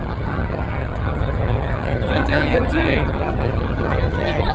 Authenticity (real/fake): fake